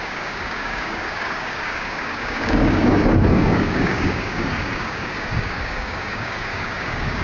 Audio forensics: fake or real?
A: fake